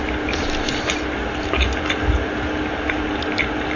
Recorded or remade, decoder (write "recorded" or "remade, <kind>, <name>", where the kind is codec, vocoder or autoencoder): recorded